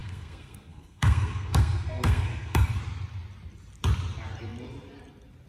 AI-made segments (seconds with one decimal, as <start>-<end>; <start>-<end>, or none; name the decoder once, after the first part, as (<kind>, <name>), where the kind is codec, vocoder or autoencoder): 0.0-2.8 (codec, SNAC)